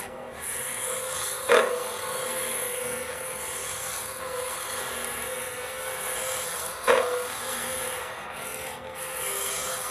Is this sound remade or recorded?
remade